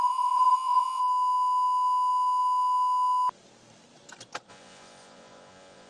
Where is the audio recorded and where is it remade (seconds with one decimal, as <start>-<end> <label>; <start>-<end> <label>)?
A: 0.0-1.0 remade; 1.0-4.5 recorded; 4.5-5.9 remade